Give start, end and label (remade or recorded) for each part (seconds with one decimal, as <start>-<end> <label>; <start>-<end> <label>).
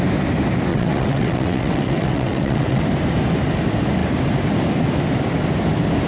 0.0-0.7 recorded; 0.7-2.8 remade; 2.8-6.1 recorded